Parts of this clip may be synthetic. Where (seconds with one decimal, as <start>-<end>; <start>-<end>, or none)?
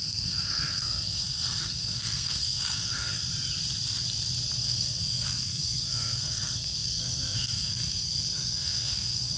0.0-3.2; 4.6-9.4